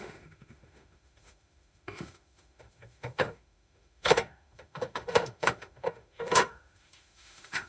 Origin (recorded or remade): remade